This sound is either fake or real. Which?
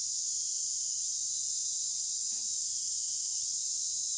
real